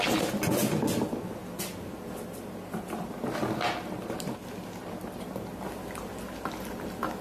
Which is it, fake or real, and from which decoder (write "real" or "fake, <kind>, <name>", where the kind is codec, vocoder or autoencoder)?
real